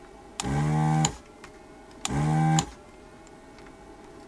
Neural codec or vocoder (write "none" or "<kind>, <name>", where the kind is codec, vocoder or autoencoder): none